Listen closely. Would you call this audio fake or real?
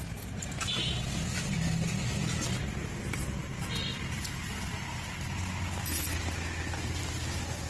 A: real